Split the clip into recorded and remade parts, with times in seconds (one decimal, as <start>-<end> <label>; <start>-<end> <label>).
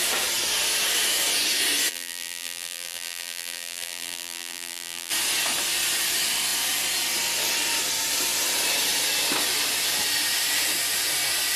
0.0-1.9 recorded; 1.9-5.1 remade; 5.1-11.6 recorded